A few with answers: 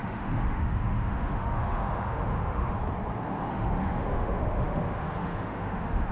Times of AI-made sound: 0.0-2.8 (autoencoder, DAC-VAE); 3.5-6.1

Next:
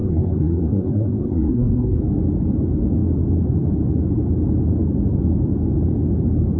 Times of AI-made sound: 0.0-2.0 (codec, SNAC)

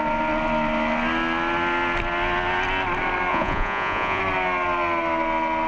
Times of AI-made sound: 3.3-4.2 (vocoder, Vocos)